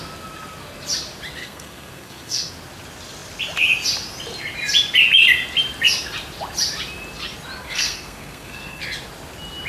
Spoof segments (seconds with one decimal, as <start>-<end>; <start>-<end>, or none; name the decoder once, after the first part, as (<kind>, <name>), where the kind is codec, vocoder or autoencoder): 1.4-2.5 (codec, SNAC); 7.6-8.8